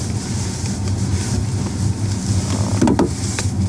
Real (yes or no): yes